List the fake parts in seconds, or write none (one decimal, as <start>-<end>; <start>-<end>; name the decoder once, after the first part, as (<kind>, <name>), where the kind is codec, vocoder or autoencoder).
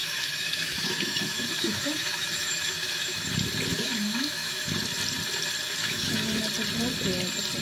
0.0-3.3 (autoencoder, DAC-VAE); 3.7-4.7; 5.8-6.4